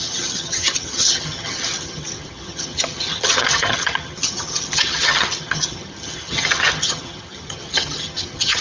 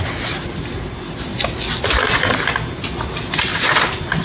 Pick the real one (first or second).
second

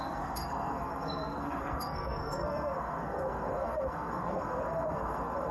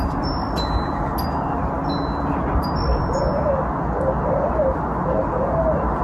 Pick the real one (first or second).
second